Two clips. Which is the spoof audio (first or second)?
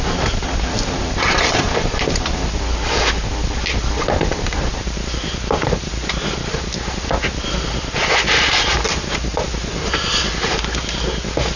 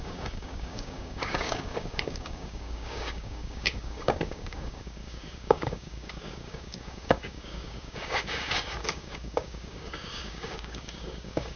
second